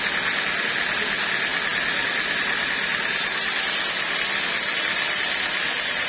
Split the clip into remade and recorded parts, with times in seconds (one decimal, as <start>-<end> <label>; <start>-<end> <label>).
0.0-6.1 recorded